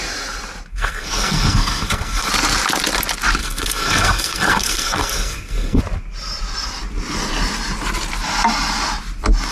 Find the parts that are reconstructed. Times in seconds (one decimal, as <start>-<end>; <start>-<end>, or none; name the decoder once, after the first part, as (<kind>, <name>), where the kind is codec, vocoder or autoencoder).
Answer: 0.7-2.3 (codec, SNAC); 3.4-5.8